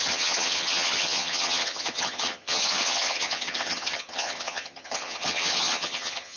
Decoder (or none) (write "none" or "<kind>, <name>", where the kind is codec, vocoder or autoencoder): vocoder, HiFi-GAN